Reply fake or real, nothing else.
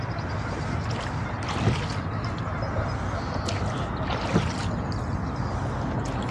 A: real